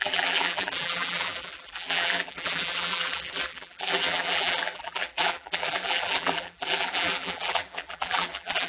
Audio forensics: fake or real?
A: fake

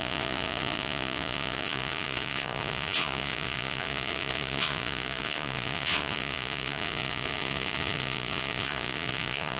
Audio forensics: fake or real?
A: fake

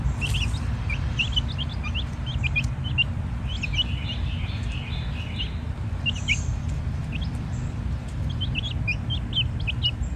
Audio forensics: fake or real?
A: real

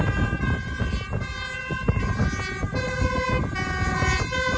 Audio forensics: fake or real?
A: real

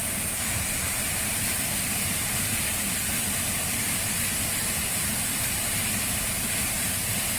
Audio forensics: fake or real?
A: fake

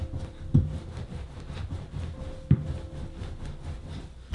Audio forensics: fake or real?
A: real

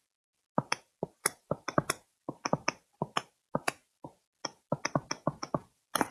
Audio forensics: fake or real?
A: real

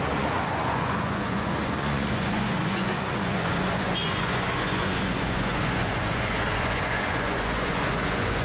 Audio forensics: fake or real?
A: fake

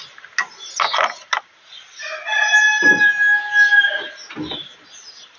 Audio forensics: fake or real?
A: real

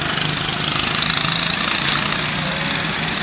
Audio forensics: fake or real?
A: real